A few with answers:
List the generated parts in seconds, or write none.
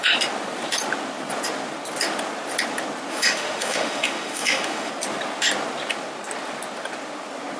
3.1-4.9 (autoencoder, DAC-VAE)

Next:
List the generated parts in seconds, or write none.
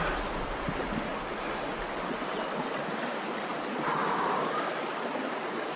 4.0-4.7 (codec, DAC)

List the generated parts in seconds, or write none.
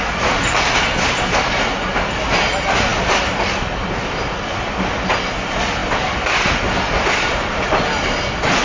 none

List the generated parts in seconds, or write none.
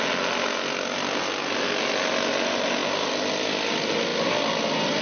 none